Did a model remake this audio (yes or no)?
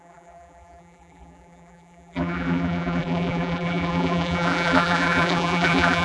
yes